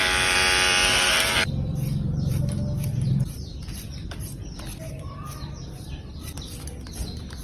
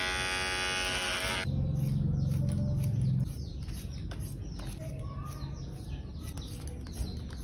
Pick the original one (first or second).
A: second